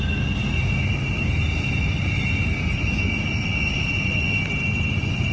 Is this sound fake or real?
real